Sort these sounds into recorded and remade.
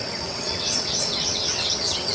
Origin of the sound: remade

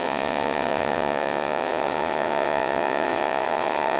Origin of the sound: remade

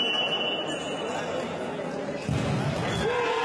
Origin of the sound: recorded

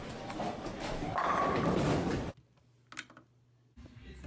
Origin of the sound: recorded